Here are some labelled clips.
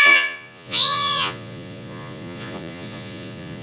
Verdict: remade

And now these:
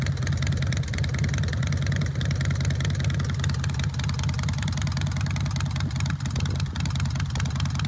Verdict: recorded